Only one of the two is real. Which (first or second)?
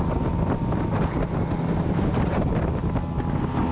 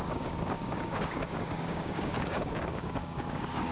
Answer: first